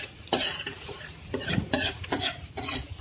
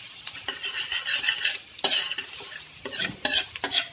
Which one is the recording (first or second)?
second